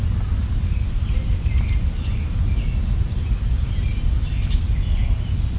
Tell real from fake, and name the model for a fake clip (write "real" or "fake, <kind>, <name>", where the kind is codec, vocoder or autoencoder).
real